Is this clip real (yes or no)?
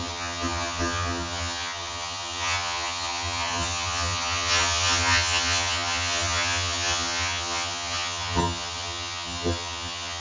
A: no